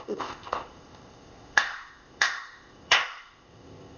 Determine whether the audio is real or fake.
fake